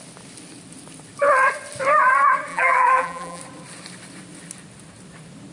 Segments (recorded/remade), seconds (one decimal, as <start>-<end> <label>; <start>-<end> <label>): 0.0-2.5 recorded; 2.5-3.4 remade; 3.4-5.5 recorded